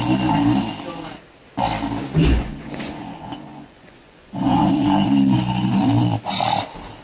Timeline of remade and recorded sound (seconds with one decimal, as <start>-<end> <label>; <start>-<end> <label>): 0.0-2.2 recorded; 2.2-4.7 remade; 4.7-7.0 recorded